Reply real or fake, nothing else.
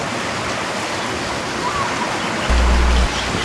real